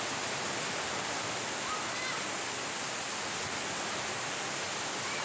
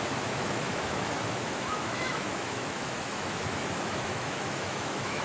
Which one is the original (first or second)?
first